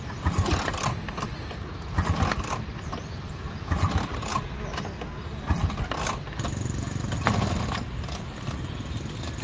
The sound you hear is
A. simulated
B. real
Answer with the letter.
B